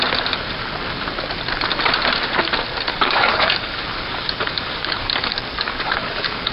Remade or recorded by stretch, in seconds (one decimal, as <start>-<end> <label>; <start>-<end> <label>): 0.0-2.9 recorded; 2.9-6.5 remade